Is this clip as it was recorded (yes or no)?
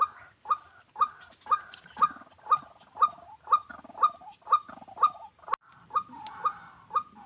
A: yes